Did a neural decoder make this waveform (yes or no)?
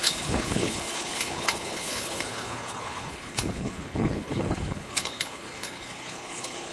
yes